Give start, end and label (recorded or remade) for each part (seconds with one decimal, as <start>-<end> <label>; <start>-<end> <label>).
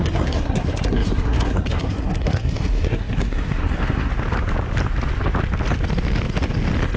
0.0-4.1 remade; 4.1-7.0 recorded